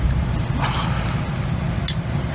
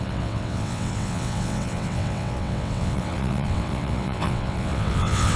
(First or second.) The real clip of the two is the first